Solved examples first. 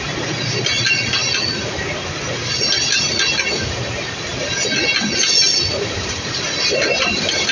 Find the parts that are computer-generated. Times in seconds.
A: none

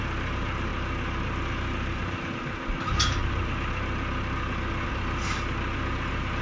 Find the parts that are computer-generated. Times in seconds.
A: none